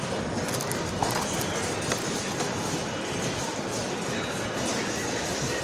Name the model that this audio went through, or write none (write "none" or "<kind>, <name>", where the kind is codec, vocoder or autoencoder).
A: none